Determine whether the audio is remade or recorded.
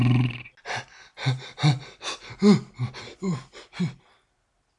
recorded